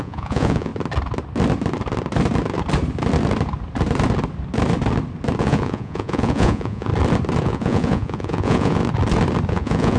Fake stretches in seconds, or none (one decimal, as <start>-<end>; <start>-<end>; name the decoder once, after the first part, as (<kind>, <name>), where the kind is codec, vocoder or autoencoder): 0.0-0.7 (vocoder, Vocos); 5.4-6.9; 7.4-8.8; 9.5-10.0